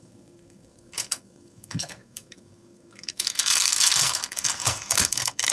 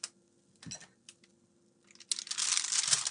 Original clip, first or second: second